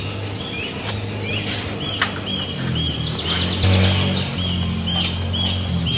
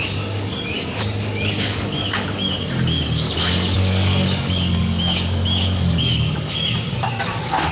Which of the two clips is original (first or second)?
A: first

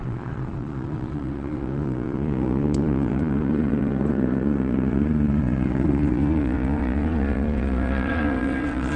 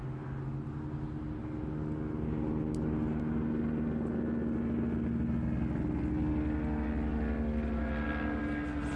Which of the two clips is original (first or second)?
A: second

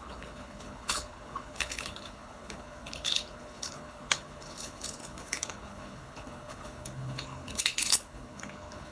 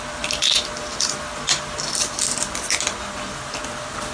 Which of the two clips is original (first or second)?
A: second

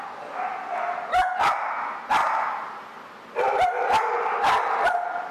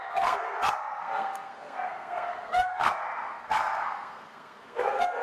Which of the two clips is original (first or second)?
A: first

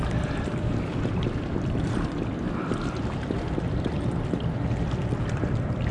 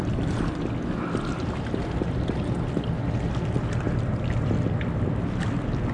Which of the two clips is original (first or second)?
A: second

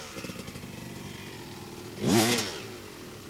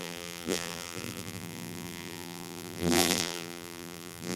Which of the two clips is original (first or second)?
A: first